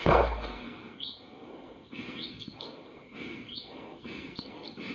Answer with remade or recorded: remade